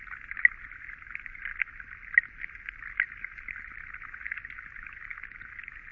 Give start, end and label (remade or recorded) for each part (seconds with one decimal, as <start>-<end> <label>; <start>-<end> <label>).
0.0-5.9 recorded